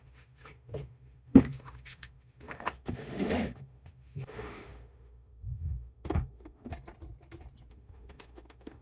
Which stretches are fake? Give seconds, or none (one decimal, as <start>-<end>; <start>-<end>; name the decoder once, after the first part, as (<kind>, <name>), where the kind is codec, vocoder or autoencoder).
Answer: 0.0-6.7 (autoencoder, DAC-VAE); 7.7-8.8